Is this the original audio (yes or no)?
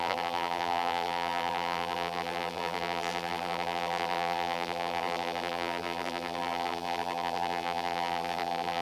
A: no